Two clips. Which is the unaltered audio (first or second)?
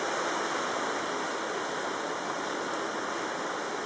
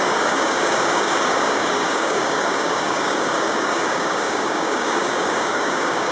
first